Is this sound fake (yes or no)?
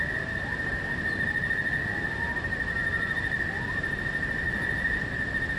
no